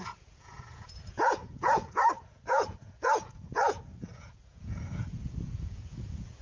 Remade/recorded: remade